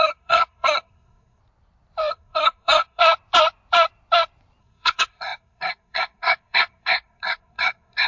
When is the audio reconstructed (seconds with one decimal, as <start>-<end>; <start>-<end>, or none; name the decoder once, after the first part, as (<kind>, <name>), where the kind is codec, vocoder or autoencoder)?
0.0-1.4 (codec, SNAC); 2.1-3.0; 4.6-8.1